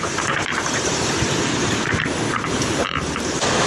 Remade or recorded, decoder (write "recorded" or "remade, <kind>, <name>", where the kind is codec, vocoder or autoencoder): remade, vocoder, BigVGAN v2